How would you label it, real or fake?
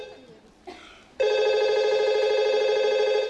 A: real